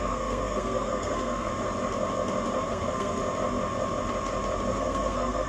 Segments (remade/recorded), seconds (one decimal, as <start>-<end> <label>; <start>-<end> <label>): 0.0-1.5 remade; 1.5-2.7 recorded; 2.7-3.2 remade; 3.2-4.7 recorded; 4.7-5.5 remade